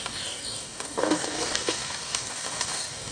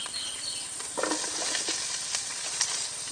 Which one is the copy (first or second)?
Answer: first